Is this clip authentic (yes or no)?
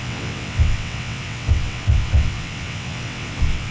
no